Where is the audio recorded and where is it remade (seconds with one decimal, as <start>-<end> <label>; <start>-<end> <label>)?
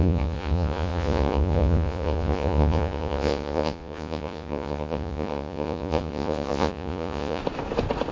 0.0-7.4 remade; 7.4-8.1 recorded